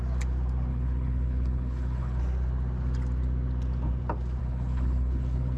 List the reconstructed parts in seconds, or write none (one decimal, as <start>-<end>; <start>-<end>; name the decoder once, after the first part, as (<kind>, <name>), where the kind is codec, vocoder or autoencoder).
0.7-2.2 (codec, HILCodec); 4.4-5.6